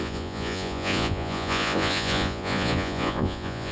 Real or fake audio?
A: fake